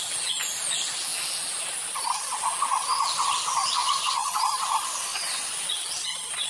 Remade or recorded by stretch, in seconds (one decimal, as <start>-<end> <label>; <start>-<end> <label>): 0.0-3.8 recorded; 3.8-4.4 remade; 4.4-5.1 recorded; 5.1-5.7 remade; 5.7-6.5 recorded